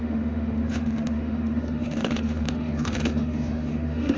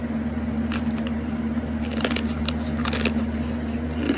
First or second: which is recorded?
second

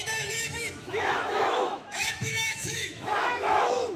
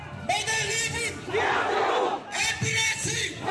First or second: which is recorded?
second